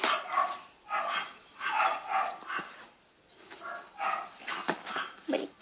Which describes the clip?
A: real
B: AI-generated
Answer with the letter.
A